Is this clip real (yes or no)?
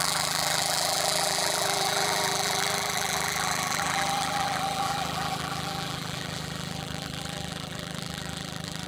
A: no